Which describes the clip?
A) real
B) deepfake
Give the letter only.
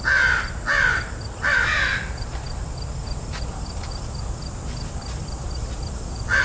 A